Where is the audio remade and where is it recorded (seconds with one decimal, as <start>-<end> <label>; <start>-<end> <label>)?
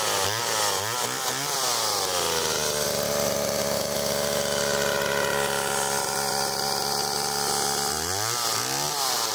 0.0-9.3 recorded